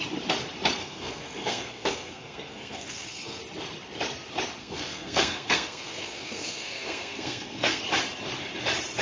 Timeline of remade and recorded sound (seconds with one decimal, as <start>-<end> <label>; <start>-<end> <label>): 0.0-0.8 recorded; 0.8-3.4 remade; 3.4-4.6 recorded; 4.6-7.8 remade; 7.8-9.0 recorded